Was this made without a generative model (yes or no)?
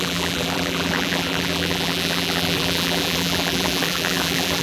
no